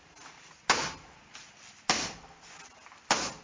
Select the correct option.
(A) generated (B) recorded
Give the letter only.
B